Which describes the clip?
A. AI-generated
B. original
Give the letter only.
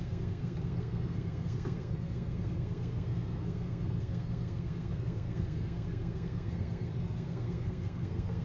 A